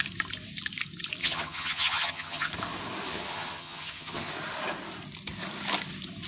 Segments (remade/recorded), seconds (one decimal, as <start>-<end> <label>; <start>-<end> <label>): 0.0-1.2 recorded; 1.2-2.5 remade; 2.5-3.1 recorded; 3.1-4.3 remade; 4.3-6.3 recorded